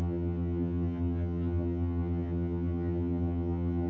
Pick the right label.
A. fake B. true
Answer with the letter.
A